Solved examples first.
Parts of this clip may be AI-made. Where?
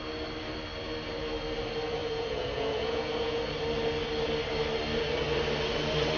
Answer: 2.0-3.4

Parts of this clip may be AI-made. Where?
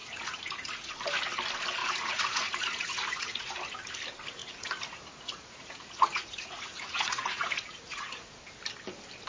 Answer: 0.0-0.9; 1.8-3.6; 4.4-8.4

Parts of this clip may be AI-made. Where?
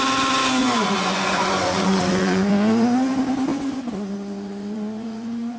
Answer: 0.6-2.5; 3.5-5.6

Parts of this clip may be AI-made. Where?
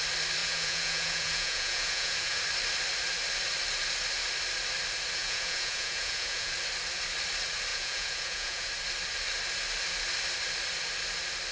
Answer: 0.4-2.4; 5.2-6.5; 7.7-8.7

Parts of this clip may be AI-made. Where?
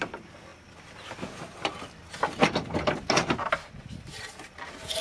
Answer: none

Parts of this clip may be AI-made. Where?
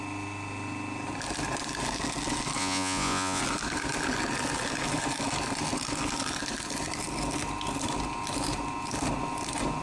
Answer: 2.6-3.4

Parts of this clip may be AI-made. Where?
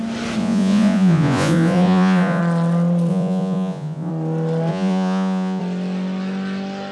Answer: 0.4-2.4; 3.1-4.1; 4.7-5.6